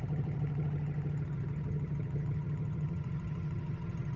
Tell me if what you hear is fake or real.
fake